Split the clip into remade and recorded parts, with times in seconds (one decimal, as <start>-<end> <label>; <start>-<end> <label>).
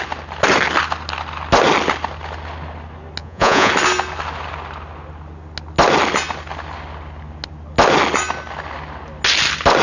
0.0-3.2 recorded; 3.2-3.7 remade; 3.7-9.8 recorded